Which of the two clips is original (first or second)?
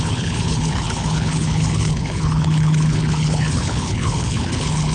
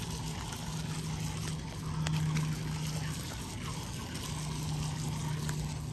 second